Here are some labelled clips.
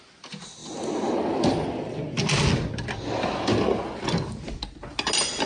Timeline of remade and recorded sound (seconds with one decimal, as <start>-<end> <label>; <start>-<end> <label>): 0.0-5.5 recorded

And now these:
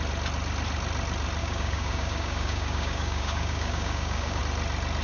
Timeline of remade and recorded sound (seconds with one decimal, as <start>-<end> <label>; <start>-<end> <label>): 0.0-1.4 recorded; 1.4-4.4 remade; 4.4-5.0 recorded

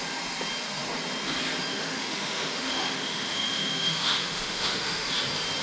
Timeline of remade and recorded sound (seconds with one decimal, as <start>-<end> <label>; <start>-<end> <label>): 0.0-1.7 recorded; 1.7-5.1 remade; 5.1-5.6 recorded

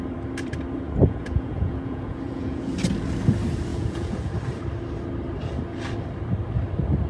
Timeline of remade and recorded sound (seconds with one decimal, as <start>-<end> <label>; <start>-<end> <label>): 0.0-1.0 recorded; 1.0-2.7 remade; 2.7-3.7 recorded; 3.7-4.3 remade; 4.3-7.1 recorded